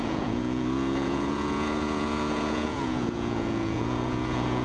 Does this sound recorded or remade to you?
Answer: remade